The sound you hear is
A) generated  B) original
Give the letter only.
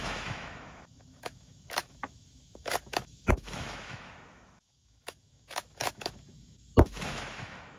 A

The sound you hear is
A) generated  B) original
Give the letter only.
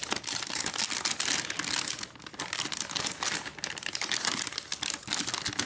B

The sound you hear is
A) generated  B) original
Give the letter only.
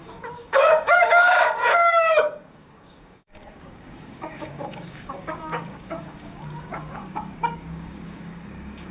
A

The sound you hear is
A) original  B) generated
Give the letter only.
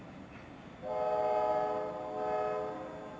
A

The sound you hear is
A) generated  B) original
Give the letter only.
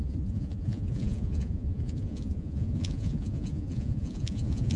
A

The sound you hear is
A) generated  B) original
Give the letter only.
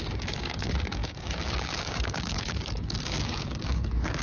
A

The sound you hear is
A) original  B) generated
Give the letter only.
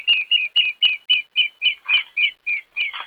A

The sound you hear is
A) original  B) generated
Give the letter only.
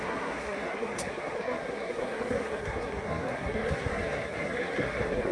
B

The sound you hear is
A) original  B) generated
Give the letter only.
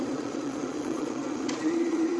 B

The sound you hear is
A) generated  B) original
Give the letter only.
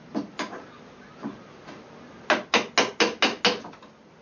B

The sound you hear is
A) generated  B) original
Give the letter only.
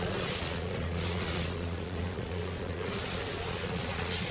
A